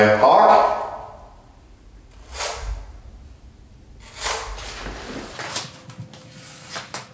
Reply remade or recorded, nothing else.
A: recorded